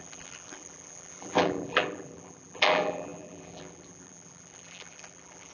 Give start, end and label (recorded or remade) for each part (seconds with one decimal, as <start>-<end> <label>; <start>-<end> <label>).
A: 0.0-5.5 remade

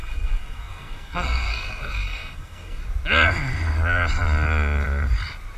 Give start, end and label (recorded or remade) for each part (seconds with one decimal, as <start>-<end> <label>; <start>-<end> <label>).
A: 0.0-2.8 remade; 2.8-5.6 recorded